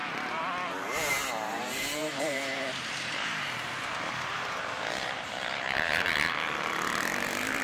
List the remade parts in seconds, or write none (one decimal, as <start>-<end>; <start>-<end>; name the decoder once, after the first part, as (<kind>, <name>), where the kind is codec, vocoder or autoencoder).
0.0-0.5 (vocoder, BigVGAN v2); 2.0-6.1